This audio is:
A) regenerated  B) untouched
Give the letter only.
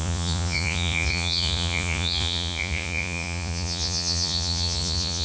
A